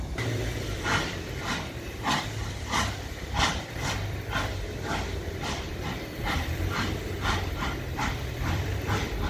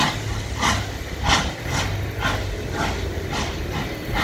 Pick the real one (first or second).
second